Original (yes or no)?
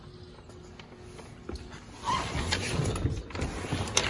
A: yes